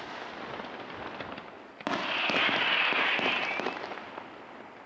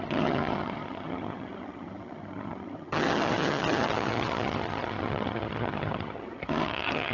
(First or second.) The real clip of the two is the first